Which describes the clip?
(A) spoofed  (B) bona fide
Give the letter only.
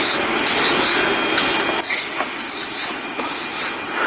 B